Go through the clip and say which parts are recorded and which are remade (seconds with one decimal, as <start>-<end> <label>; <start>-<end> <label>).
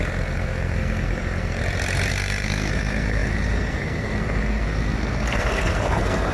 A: 0.0-1.6 remade; 1.6-2.1 recorded; 2.1-6.3 remade